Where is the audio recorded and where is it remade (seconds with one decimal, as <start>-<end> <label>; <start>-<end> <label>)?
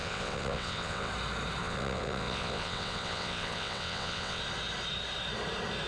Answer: 0.0-1.1 remade; 1.1-1.6 recorded; 1.6-4.4 remade; 4.4-5.9 recorded